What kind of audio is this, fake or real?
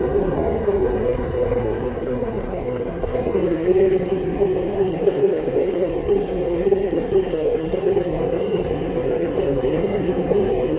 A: fake